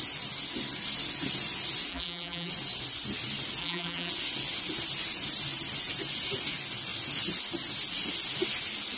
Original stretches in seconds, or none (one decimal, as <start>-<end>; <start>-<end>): 0.0-1.9; 2.5-3.6; 4.1-9.0

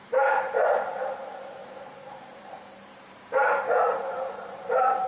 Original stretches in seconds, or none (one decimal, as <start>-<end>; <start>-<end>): 1.1-1.6

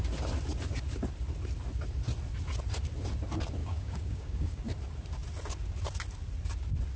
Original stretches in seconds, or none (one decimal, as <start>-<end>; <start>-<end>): 0.0-3.6; 4.6-7.0